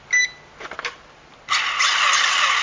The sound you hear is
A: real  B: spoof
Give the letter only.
A